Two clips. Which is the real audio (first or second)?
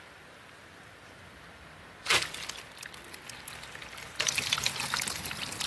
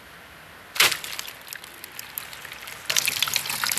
second